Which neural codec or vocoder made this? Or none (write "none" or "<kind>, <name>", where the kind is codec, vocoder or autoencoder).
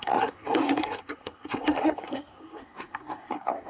codec, SNAC